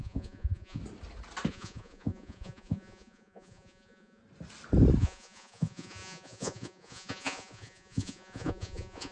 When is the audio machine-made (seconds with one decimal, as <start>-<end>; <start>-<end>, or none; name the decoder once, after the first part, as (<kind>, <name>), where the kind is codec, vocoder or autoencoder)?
0.0-0.8 (vocoder, Vocos); 1.5-4.2; 5.0-9.1